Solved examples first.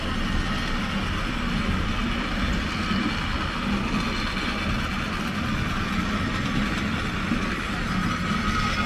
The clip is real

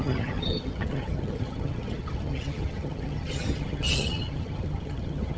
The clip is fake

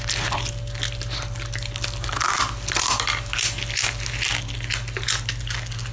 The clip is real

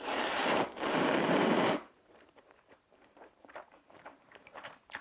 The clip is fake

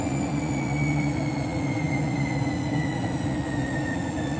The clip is fake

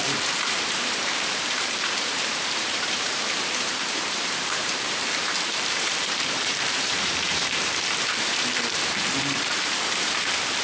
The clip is fake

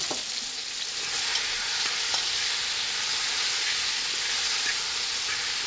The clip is real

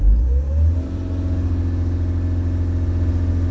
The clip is real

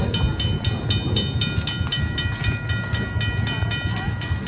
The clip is real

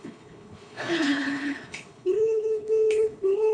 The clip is fake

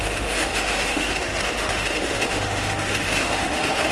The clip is fake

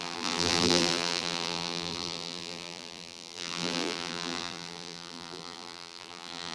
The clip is fake